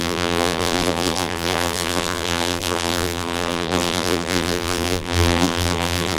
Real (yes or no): no